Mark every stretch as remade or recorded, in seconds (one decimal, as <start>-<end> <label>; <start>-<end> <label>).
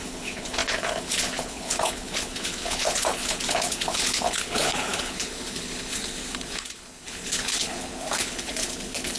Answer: 0.0-9.2 remade